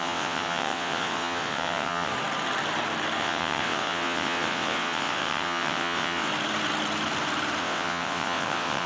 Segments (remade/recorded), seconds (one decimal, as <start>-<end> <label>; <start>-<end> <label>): 0.0-2.1 remade; 2.1-3.2 recorded; 3.2-6.3 remade; 6.3-7.6 recorded; 7.6-8.9 remade